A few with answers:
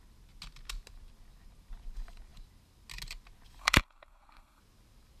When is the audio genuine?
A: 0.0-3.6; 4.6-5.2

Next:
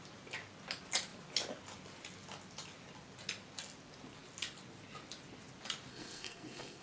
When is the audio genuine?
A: 0.0-5.9

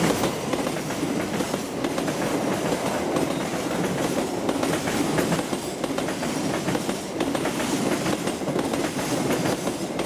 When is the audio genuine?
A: 0.0-10.1

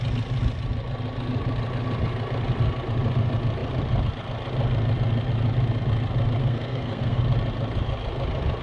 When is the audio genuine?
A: 0.0-6.4; 7.2-8.6

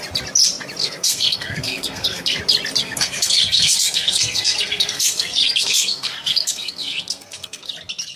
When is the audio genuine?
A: 0.0-0.8; 2.4-2.8; 7.7-8.2

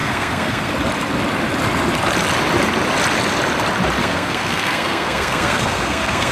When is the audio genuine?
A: 0.7-4.0

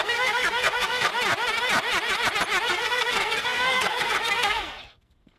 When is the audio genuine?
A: 1.1-2.7

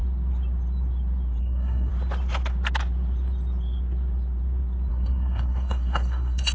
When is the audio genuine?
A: 0.0-1.4; 1.9-4.9